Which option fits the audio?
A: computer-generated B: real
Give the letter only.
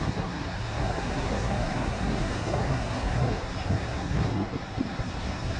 A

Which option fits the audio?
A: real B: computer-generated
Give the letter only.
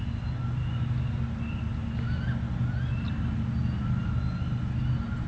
A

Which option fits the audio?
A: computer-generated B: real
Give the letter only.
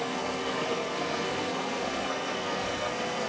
A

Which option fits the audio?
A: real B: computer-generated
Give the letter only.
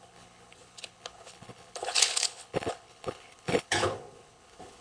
B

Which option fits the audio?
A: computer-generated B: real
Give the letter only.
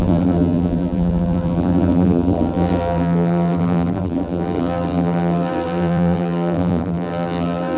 A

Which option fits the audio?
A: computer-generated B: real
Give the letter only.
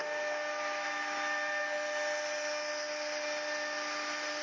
B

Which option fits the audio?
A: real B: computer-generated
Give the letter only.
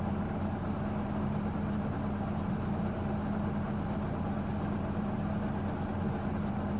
A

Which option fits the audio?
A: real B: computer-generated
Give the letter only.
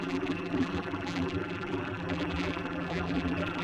B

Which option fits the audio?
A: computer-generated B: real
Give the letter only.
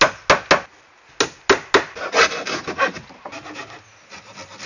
B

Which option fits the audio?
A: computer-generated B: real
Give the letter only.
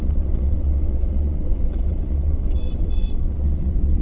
A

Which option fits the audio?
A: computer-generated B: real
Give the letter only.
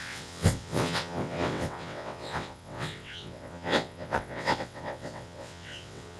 A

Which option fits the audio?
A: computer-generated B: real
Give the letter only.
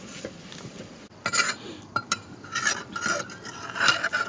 B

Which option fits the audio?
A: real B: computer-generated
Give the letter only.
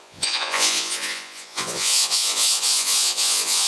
B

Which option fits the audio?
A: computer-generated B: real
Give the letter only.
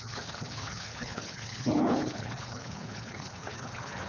A